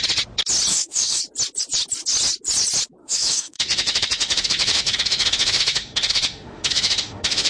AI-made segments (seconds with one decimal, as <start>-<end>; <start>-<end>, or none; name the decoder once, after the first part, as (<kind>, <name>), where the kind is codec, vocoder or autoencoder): 0.7-1.2 (autoencoder, DAC-VAE); 3.0-7.5